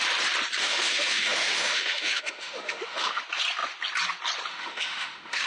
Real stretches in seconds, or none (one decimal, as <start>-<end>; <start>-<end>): 0.0-0.6; 3.2-4.5